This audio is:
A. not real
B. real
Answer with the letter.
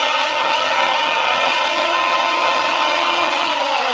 A